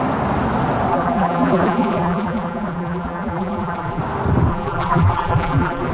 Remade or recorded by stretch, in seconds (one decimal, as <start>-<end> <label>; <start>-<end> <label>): 0.0-0.9 recorded; 0.9-4.0 remade; 4.0-4.5 recorded; 4.5-5.9 remade